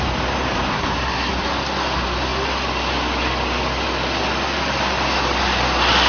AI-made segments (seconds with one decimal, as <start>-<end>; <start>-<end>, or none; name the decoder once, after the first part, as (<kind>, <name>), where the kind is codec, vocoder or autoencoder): 0.7-1.3 (codec, SNAC)